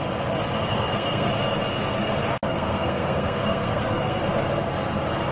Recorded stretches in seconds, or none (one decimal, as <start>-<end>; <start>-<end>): 0.0-0.7; 1.3-2.5; 4.2-5.3